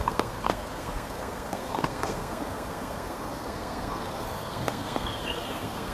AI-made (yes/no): yes